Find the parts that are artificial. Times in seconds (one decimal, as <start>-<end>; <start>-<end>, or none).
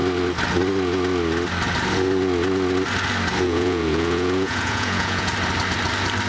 3.4-5.3